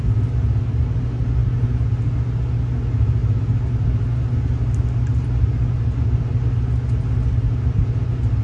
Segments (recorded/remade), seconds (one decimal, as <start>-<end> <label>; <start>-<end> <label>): 0.0-8.4 recorded